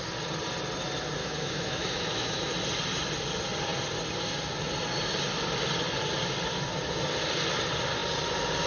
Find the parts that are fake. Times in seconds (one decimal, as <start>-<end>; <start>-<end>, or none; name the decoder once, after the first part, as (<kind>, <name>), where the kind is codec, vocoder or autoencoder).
1.2-2.5 (autoencoder, DAC-VAE)